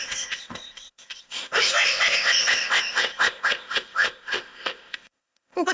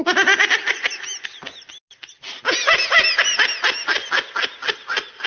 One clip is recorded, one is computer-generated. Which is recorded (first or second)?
second